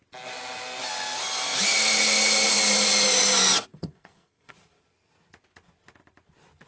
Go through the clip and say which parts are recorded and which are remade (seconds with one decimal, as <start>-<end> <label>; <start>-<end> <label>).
0.0-3.7 recorded; 3.7-4.5 remade; 4.5-6.7 recorded

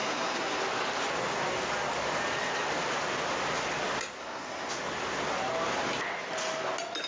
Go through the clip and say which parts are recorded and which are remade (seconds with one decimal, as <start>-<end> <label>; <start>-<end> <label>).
0.0-0.6 remade; 0.6-4.2 recorded; 4.2-4.7 remade; 4.7-7.1 recorded

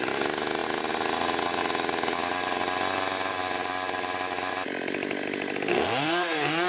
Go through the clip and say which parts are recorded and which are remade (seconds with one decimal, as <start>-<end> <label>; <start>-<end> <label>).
0.0-5.7 recorded; 5.7-6.7 remade

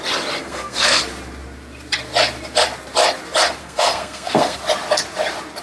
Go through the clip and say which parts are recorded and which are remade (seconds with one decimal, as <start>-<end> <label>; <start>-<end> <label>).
0.0-0.4 recorded; 0.4-1.0 remade; 1.0-3.6 recorded; 3.6-4.6 remade; 4.6-5.6 recorded

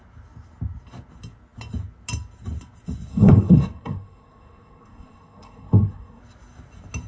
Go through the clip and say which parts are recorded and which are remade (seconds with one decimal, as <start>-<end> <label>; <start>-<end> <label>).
0.0-3.1 recorded; 3.1-6.2 remade; 6.2-7.1 recorded

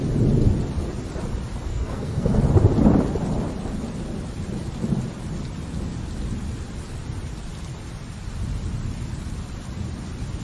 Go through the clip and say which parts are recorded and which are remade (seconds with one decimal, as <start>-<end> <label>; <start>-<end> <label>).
0.0-1.7 recorded; 1.7-2.4 remade; 2.4-10.4 recorded